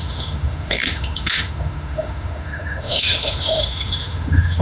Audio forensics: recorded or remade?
remade